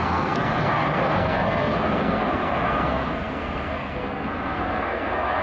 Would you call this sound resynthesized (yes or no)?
yes